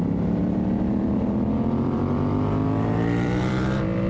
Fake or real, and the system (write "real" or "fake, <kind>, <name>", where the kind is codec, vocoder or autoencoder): fake, vocoder, BigVGAN v2